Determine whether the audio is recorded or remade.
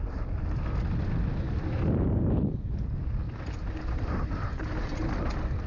recorded